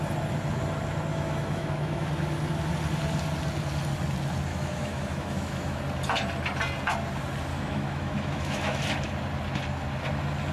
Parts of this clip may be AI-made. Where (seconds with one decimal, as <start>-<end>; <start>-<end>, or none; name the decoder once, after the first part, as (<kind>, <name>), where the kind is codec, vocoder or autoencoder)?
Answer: 1.1-2.1 (autoencoder, DAC-VAE); 4.5-5.8; 7.5-8.8